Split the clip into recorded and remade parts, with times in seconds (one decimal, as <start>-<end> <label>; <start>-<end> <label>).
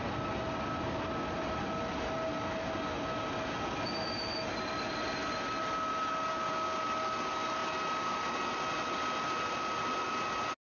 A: 0.0-10.6 recorded